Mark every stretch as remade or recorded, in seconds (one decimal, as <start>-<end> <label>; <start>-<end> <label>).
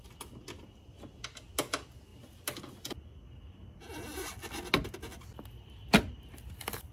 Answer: 0.0-6.9 recorded